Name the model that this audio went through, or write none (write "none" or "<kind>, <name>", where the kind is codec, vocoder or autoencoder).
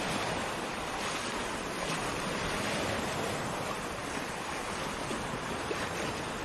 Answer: none